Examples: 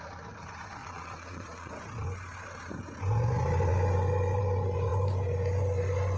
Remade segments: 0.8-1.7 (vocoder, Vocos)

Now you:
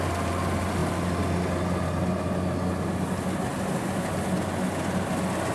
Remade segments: none

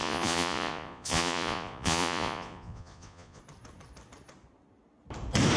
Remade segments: 0.0-3.4 (vocoder, Vocos)

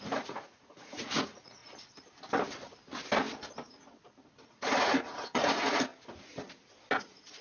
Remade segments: 0.0-1.6 (vocoder, Vocos); 4.5-5.9; 7.0-7.4

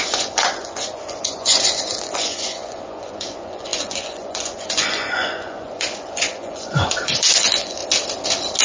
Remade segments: 0.0-7.8 (vocoder, Vocos)